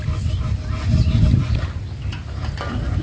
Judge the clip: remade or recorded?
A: recorded